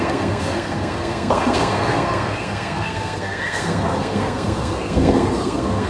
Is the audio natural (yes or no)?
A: no